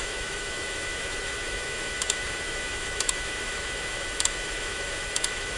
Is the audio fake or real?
fake